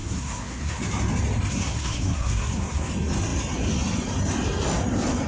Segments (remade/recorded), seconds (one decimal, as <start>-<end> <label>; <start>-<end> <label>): 0.0-0.8 remade; 0.8-1.5 recorded; 1.5-2.9 remade; 2.9-5.3 recorded